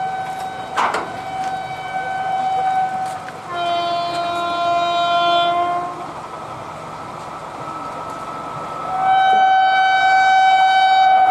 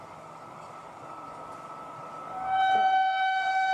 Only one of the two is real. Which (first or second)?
first